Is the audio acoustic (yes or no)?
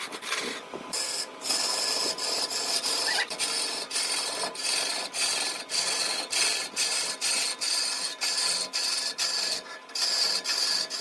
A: yes